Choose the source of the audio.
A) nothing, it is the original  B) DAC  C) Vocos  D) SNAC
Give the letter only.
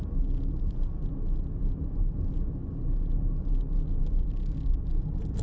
A